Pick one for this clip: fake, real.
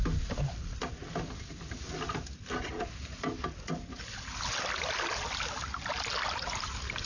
real